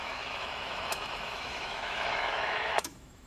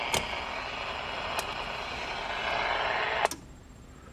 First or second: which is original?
second